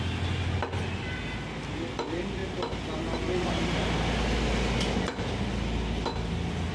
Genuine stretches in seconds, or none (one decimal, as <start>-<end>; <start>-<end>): 0.0-6.7

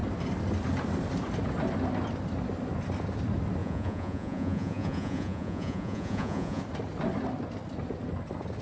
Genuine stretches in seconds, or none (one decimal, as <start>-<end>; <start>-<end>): 0.0-3.6; 6.6-8.6

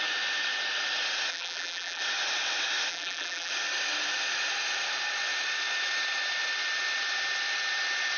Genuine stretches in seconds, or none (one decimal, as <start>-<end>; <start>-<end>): 0.0-1.3; 2.0-2.9; 3.5-8.2

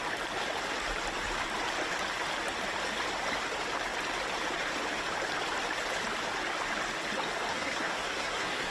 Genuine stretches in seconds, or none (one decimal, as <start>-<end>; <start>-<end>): 0.0-7.5